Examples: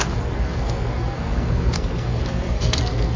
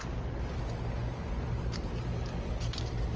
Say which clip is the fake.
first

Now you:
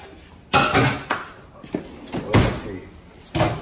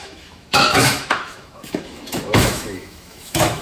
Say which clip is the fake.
second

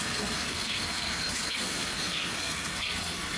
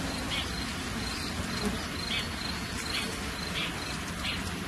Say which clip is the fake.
first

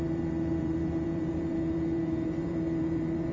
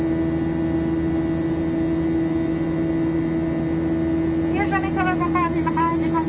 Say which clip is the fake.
first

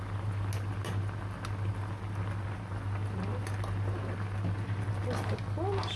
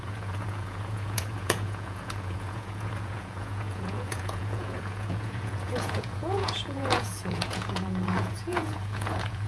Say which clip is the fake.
second